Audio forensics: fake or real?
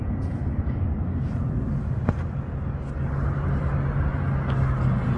real